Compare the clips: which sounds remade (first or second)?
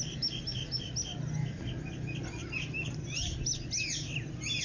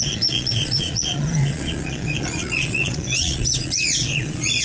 second